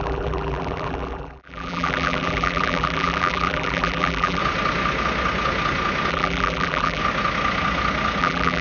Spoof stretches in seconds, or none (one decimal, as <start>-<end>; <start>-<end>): 0.0-4.4; 6.1-7.0; 8.2-8.6